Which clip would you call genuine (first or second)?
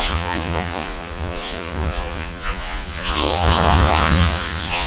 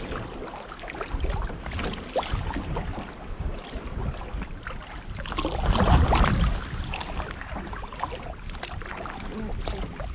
second